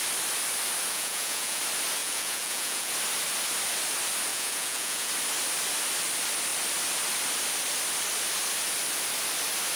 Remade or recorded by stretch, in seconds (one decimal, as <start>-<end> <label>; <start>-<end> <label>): 0.0-0.9 recorded; 0.9-1.6 remade; 1.6-2.0 recorded; 2.0-2.9 remade; 2.9-4.3 recorded; 4.3-5.1 remade; 5.1-9.8 recorded